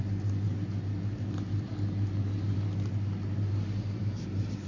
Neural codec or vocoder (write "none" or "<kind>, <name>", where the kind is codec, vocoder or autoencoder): none